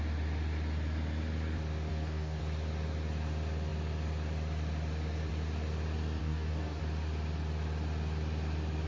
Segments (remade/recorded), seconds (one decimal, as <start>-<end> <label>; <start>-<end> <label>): 0.0-1.9 recorded; 1.9-2.4 remade; 2.4-6.2 recorded; 6.2-6.8 remade; 6.8-8.9 recorded